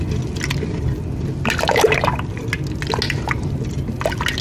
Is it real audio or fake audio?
real